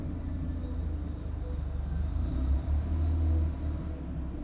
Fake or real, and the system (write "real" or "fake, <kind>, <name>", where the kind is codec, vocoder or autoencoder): real